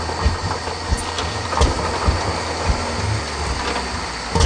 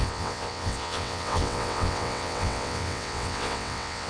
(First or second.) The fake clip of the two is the second